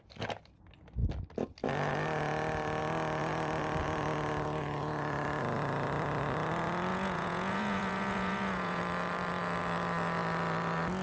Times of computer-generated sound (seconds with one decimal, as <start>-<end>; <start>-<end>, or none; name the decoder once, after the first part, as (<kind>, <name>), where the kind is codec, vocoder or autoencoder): 6.9-8.8 (vocoder, Vocos)